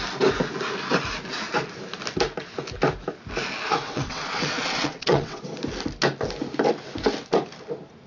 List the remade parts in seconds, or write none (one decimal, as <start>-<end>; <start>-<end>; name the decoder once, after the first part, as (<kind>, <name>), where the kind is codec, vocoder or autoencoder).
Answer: 3.8-5.4 (vocoder, WaveNeXt)